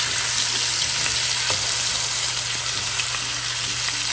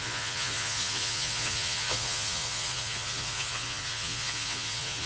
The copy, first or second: second